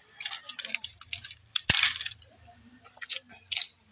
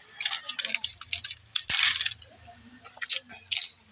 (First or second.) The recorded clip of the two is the second